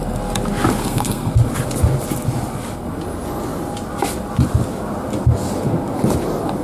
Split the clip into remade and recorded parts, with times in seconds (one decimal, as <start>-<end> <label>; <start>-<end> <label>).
0.0-0.8 recorded; 0.8-1.3 remade; 1.3-6.6 recorded